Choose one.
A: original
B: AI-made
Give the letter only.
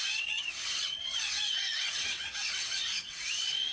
B